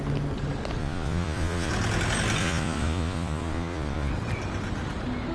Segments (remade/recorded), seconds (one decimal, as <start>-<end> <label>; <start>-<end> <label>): 0.0-0.8 recorded; 0.8-1.7 remade; 1.7-2.4 recorded; 2.4-4.1 remade; 4.1-5.3 recorded